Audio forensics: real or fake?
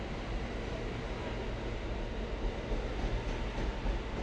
real